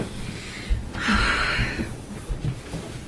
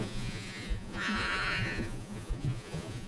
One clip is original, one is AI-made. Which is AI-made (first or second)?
second